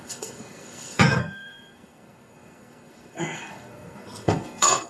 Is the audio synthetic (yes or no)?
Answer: yes